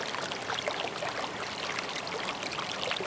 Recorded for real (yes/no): yes